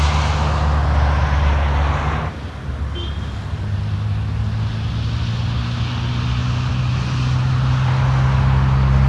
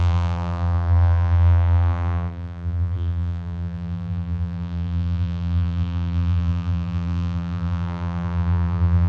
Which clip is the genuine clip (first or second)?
first